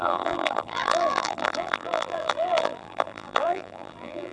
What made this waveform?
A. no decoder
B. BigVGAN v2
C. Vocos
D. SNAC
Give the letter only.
B